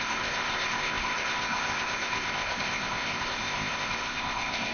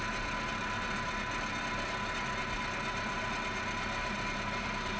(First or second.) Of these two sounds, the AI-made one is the first